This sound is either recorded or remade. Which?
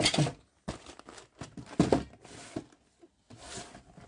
recorded